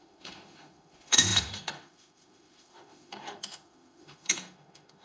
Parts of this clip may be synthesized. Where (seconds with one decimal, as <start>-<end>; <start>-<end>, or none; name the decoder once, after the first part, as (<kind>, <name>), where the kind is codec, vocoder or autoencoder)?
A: 0.0-5.0 (autoencoder, DAC-VAE)